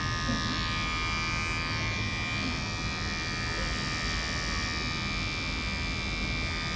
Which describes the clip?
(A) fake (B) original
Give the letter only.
B